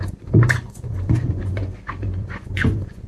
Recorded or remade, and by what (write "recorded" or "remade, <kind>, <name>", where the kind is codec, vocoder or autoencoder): remade, vocoder, Vocos